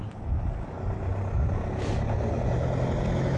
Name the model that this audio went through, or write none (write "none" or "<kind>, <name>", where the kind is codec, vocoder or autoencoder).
none